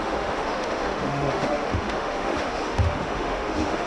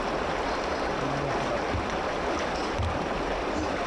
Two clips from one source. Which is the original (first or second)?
second